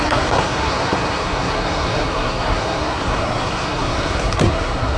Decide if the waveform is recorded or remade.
remade